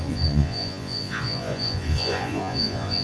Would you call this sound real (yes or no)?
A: no